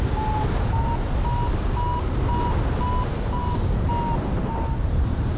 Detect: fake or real real